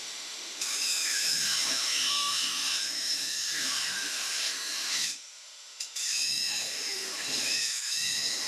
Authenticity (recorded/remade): remade